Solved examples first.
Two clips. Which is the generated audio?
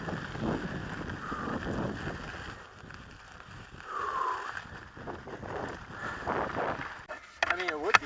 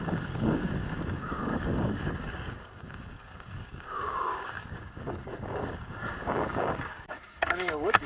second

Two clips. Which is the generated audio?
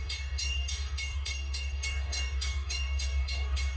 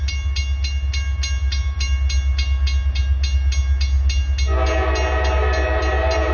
first